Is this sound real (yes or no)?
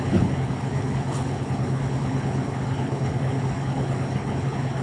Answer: no